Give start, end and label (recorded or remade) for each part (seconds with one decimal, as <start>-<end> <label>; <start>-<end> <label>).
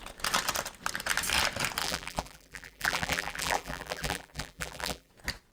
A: 0.0-1.8 recorded; 1.8-5.1 remade; 5.1-5.5 recorded